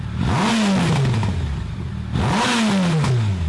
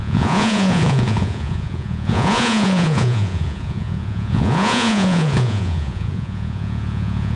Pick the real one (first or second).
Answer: first